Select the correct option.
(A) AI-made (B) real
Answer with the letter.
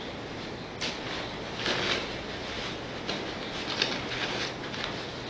B